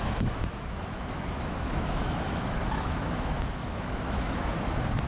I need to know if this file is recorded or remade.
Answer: remade